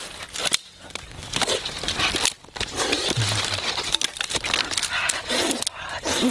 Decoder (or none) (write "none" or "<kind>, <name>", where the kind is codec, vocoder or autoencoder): none